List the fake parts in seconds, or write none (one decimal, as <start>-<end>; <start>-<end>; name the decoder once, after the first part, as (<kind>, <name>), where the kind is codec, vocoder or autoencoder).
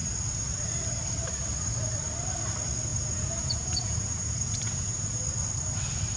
2.9-5.2 (vocoder, Vocos)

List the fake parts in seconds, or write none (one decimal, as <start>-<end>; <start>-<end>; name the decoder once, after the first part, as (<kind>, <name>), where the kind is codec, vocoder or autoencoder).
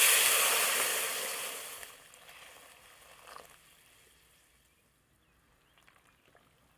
none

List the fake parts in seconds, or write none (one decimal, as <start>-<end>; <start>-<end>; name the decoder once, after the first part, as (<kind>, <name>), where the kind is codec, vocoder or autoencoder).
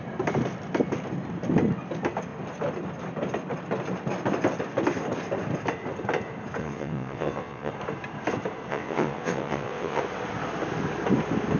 6.6-7.7 (vocoder, WaveNeXt); 8.7-10.0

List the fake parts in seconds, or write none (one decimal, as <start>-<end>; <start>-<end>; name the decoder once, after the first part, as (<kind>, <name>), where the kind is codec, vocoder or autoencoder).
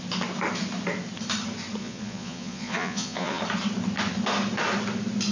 1.8-3.4 (vocoder, Vocos)